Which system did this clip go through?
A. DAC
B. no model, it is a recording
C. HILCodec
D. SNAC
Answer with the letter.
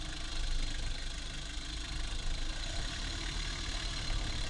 B